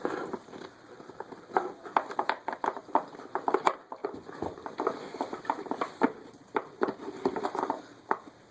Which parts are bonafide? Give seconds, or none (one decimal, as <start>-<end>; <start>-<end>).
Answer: 4.0-5.4; 7.0-7.8